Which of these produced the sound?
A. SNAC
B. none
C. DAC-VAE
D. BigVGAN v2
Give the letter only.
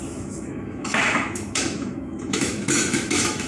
C